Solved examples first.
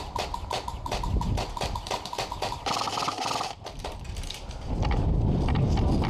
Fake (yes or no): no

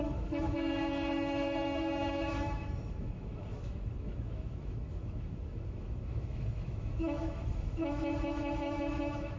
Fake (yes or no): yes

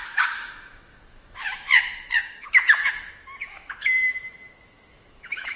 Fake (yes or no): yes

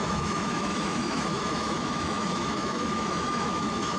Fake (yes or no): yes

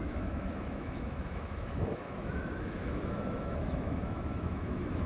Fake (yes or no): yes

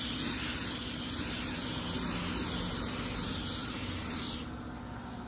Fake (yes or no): no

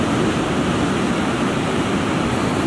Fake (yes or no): no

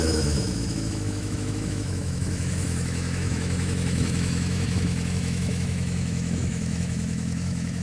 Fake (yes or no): yes